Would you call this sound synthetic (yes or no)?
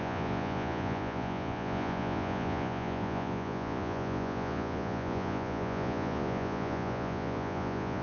yes